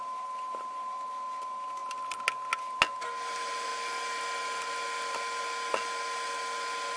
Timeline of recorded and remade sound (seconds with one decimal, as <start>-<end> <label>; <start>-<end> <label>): 0.0-7.0 recorded